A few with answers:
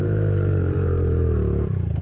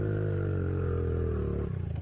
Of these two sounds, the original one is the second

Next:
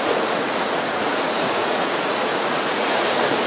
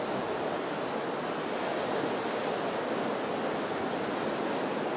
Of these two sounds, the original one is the second